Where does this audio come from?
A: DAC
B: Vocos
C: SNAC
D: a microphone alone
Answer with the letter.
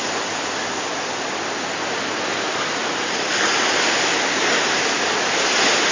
D